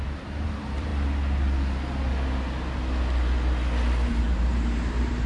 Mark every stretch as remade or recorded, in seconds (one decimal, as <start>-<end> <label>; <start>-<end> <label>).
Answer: 0.0-0.9 remade; 0.9-4.1 recorded; 4.1-5.3 remade